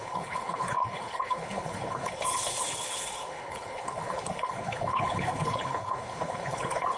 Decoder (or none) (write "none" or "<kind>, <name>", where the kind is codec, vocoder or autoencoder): codec, HILCodec